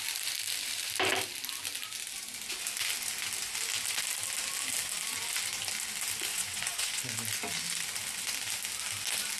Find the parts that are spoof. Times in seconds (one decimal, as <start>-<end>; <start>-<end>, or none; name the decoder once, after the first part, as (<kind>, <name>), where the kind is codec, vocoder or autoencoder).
6.3-7.0 (vocoder, Vocos)